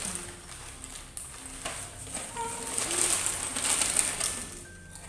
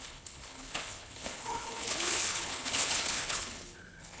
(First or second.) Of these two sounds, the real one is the first